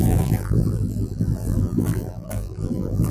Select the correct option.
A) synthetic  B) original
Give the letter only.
A